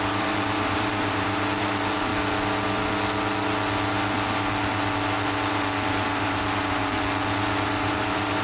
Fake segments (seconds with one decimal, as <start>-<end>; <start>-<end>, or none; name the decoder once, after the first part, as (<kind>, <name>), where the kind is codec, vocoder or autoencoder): 0.0-2.1 (vocoder, BigVGAN v2); 5.9-6.8; 7.7-8.4